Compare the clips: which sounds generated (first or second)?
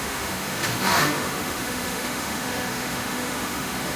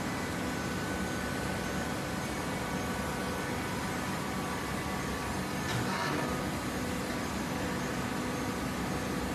first